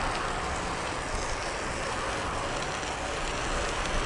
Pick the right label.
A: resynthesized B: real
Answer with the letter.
B